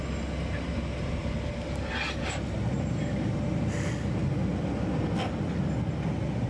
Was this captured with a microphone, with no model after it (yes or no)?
yes